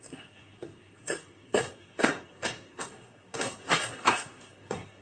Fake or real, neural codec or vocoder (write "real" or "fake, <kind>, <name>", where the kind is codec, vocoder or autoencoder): fake, codec, SNAC